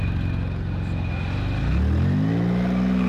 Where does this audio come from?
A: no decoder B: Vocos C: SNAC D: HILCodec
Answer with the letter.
A